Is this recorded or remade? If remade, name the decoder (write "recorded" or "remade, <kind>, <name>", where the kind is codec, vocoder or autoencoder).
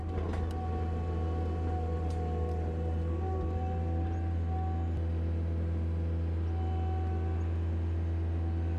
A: recorded